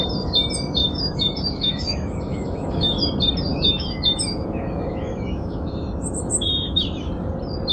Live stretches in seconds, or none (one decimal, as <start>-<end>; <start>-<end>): 0.0-0.8; 3.0-3.5; 7.1-7.7